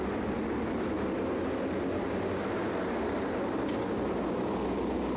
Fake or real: real